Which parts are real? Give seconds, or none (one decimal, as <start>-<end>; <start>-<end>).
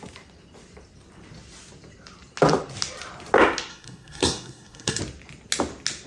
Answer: 0.0-3.7; 5.0-6.1